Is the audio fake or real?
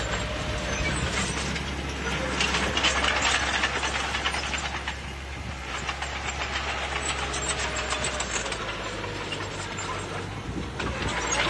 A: real